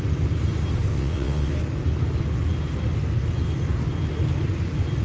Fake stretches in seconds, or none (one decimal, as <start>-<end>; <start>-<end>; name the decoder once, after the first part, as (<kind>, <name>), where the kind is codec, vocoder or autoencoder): 0.9-1.5 (vocoder, WaveNeXt)